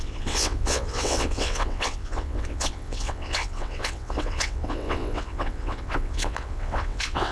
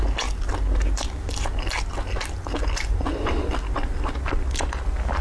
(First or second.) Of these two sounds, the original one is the second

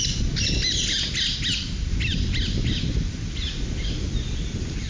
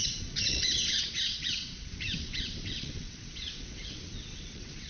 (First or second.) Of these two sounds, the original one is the first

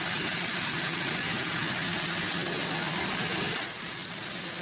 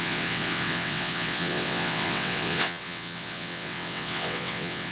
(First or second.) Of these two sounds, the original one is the first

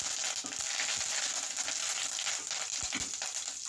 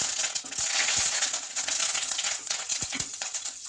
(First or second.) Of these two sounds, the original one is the first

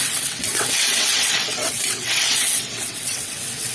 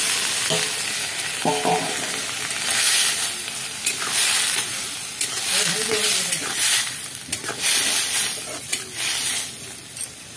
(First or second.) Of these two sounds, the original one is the second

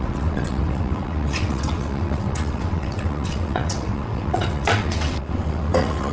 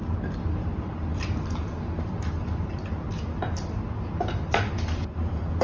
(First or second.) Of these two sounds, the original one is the second